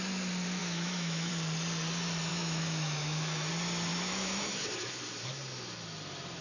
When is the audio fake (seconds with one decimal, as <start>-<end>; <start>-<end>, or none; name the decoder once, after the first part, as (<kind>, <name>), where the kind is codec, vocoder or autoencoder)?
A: 0.6-1.3 (autoencoder, DAC-VAE); 2.3-3.5; 3.9-4.6